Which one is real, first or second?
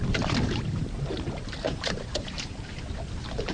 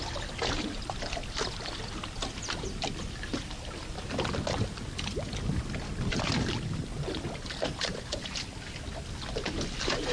second